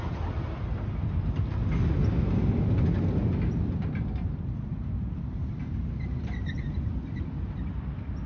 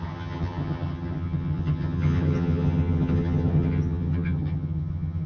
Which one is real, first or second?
first